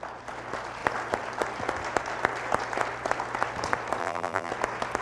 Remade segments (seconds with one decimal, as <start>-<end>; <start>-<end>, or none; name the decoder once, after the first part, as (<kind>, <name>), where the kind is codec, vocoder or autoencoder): 4.0-4.5 (vocoder, BigVGAN v2)